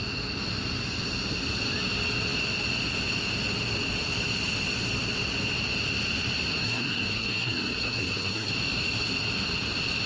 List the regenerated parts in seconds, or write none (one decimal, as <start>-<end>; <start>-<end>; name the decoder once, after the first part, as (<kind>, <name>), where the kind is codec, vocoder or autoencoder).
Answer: 6.5-8.5 (codec, SNAC)